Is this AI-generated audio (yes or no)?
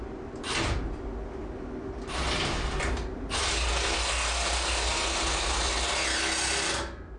no